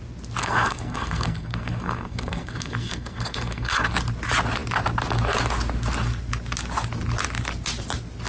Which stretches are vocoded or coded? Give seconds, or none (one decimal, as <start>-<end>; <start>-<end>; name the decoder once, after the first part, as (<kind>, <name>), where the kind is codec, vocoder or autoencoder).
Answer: 0.4-3.9 (codec, SNAC)